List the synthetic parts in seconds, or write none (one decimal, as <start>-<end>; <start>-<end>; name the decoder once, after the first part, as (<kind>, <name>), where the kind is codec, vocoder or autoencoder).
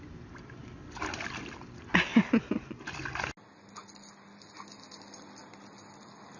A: none